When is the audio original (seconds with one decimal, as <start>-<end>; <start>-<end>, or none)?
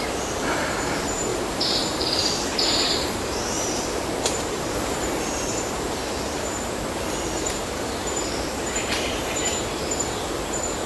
none